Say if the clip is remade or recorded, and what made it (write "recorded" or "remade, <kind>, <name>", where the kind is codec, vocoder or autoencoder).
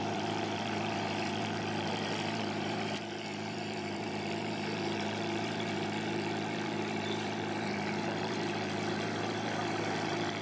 remade, vocoder, BigVGAN v2